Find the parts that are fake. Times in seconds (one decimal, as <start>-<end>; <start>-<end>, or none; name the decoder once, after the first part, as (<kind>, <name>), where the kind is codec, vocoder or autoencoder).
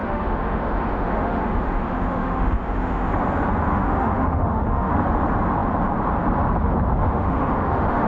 0.0-3.1 (autoencoder, DAC-VAE); 3.7-4.9; 7.0-8.1